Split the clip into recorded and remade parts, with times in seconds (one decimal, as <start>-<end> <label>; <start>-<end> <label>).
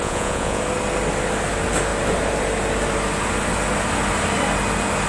0.0-0.6 remade; 0.6-5.1 recorded